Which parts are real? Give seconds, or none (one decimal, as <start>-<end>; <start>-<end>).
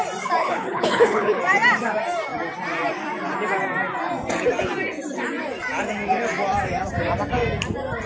0.0-0.4; 1.4-8.1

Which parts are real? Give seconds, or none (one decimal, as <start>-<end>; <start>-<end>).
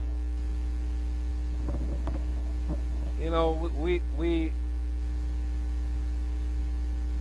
0.0-7.2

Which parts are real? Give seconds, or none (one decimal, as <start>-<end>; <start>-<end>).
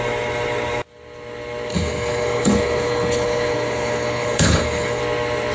0.0-1.7; 5.0-5.5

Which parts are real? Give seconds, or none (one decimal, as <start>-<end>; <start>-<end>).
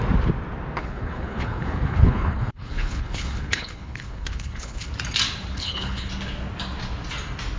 0.0-0.8; 4.9-5.5; 6.1-7.6